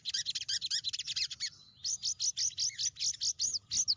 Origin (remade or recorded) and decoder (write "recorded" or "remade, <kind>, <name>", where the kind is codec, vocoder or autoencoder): recorded